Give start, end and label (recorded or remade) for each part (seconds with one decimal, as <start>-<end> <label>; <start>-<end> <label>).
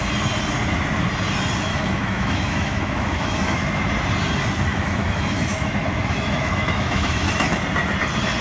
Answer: 0.0-1.7 recorded; 1.7-3.9 remade; 3.9-4.7 recorded; 4.7-7.6 remade; 7.6-8.4 recorded